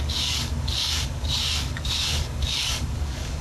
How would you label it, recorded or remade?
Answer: remade